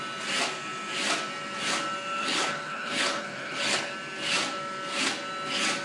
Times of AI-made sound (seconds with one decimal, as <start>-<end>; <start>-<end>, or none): 2.2-3.9